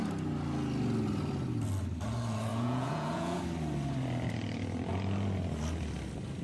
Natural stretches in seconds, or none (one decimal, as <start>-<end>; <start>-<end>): 0.0-2.5; 3.4-6.4